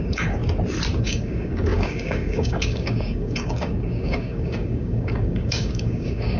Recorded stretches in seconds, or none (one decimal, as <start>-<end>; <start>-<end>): 0.4-1.0